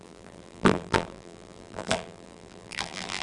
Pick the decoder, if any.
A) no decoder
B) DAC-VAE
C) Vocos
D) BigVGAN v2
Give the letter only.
D